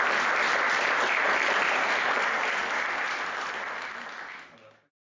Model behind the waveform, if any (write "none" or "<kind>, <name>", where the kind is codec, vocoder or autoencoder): none